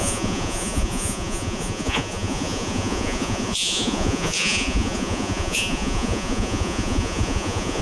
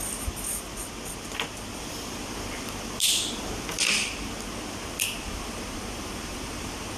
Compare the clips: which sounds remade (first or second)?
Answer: first